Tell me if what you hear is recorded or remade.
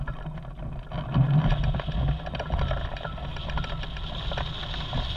recorded